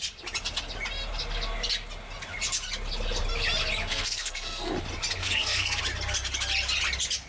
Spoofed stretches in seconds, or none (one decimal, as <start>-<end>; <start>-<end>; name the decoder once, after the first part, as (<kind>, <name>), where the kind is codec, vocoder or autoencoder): 3.9-4.7 (codec, SNAC); 5.2-5.8